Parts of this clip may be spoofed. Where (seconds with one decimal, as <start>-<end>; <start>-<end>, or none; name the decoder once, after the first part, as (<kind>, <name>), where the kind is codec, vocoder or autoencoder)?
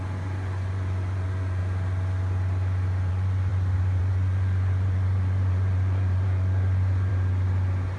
0.0-1.6 (vocoder, Vocos); 3.1-3.5; 4.0-7.1